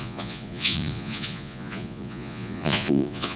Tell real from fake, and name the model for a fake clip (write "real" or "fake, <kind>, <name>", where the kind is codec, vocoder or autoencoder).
fake, vocoder, Vocos